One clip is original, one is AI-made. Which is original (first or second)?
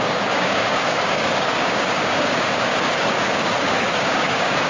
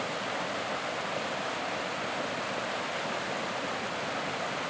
second